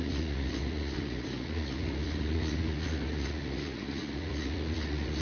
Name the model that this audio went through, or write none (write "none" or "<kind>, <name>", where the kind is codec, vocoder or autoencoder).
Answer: vocoder, Vocos